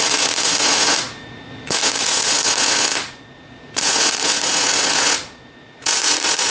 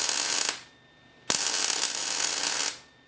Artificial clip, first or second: first